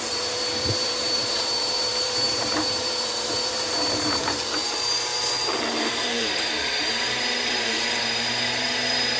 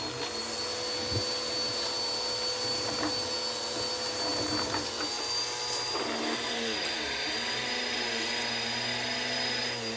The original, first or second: second